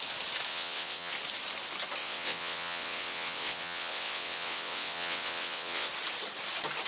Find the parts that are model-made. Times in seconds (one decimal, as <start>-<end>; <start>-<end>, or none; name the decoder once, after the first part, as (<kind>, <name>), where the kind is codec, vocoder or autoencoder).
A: 0.5-1.1 (vocoder, WaveNeXt); 2.0-5.9